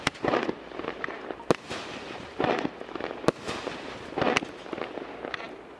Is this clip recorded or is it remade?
recorded